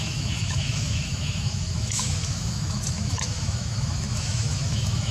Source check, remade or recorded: remade